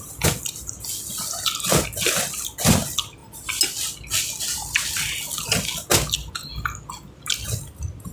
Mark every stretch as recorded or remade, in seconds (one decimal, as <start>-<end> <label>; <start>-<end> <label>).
0.0-8.1 recorded